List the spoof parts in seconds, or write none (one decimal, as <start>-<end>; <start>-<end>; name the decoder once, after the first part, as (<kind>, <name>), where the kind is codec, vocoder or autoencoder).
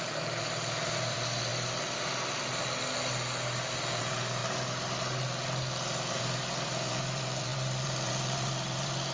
0.0-1.5 (vocoder, BigVGAN v2); 4.0-4.4; 6.1-9.1